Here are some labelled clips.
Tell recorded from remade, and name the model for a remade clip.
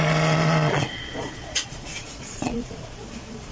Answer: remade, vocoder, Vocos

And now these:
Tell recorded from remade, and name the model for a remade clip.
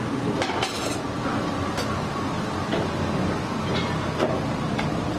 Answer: recorded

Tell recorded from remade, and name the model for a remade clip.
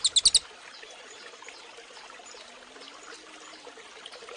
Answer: recorded